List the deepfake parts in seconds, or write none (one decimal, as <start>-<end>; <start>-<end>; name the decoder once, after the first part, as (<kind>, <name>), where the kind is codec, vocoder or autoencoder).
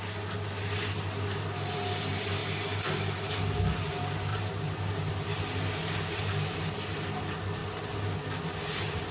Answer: 4.3-5.1 (vocoder, BigVGAN v2)